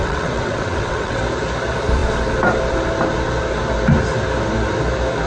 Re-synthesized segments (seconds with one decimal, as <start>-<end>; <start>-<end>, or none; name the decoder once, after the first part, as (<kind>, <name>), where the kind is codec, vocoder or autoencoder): 0.0-1.2 (vocoder, WaveNeXt)